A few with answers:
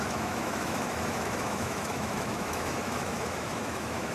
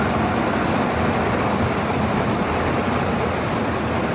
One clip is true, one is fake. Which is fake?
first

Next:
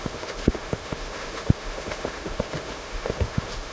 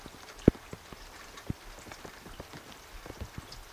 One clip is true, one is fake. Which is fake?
first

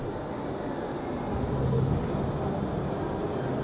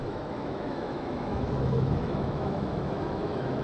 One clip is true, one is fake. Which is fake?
second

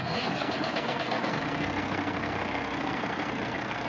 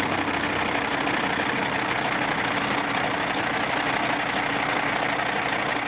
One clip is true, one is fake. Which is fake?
first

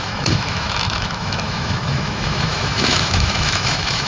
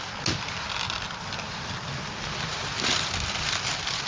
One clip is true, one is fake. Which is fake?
first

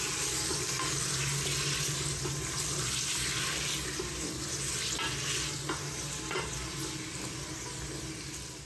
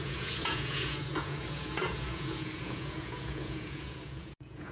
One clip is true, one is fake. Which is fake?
second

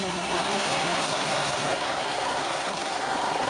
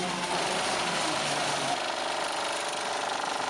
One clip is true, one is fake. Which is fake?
first